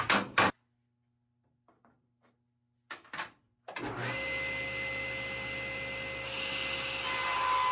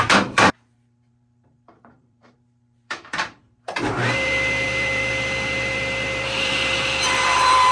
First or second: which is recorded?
first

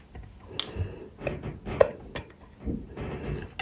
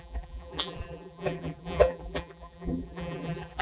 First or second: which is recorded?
first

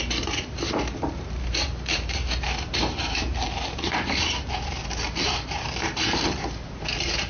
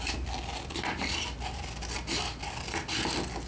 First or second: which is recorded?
second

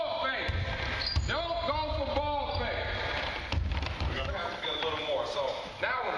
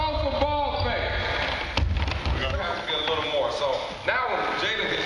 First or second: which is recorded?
second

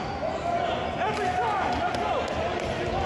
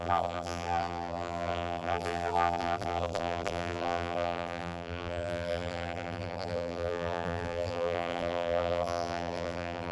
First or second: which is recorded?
first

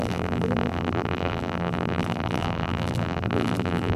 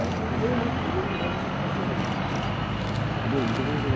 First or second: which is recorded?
second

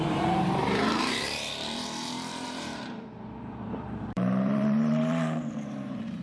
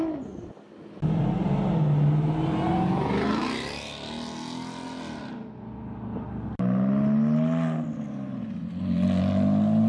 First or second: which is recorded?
second